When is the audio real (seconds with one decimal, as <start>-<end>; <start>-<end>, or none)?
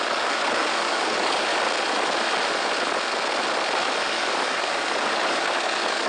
1.5-4.0